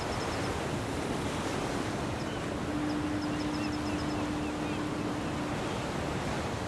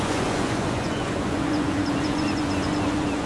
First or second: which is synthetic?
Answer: second